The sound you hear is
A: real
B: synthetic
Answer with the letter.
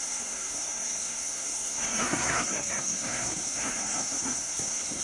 B